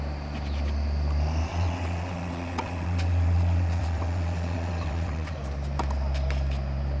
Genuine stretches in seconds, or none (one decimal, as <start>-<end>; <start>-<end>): 0.0-1.5; 5.3-7.0